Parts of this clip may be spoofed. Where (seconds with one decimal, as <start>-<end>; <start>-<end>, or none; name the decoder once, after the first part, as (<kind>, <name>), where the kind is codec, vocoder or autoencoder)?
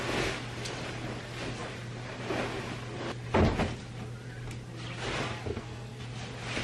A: 5.5-6.0 (codec, SNAC)